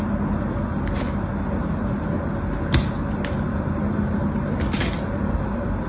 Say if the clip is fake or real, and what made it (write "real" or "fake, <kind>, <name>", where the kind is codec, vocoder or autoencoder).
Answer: real